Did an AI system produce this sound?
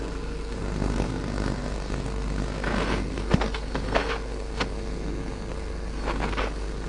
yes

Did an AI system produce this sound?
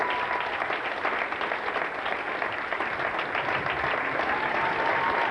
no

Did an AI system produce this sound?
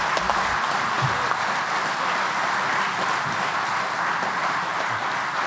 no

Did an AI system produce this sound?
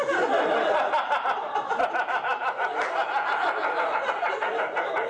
no